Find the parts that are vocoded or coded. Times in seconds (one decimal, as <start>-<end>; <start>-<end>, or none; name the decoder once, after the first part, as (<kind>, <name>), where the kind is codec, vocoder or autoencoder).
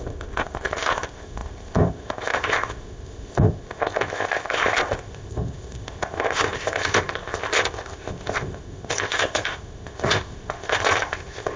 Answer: 0.0-11.6 (codec, ZipCodec)